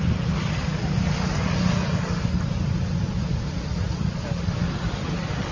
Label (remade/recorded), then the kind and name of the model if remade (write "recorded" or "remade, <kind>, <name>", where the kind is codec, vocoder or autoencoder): recorded